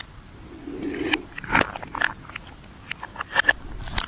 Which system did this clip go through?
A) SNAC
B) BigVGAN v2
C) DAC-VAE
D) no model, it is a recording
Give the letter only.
D